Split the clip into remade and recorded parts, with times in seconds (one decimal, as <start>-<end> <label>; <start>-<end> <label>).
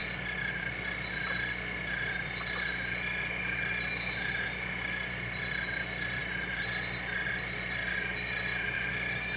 0.0-9.4 recorded